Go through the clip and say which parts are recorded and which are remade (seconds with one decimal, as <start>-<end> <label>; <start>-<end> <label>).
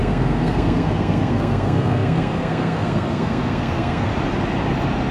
0.0-4.1 remade; 4.1-5.1 recorded